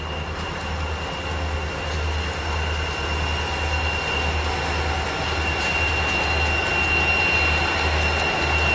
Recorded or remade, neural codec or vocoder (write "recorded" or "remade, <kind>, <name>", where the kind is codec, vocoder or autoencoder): recorded